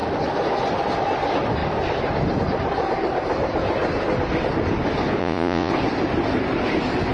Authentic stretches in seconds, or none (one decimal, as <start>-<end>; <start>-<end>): 0.0-5.2; 5.7-7.1